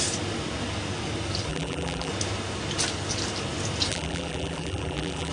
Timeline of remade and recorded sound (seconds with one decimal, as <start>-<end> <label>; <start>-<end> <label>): 0.0-1.5 recorded; 1.5-2.1 remade; 2.1-3.9 recorded; 3.9-5.3 remade